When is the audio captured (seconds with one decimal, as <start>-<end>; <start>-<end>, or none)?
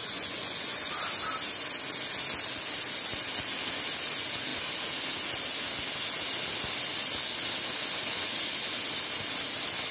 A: 0.9-9.9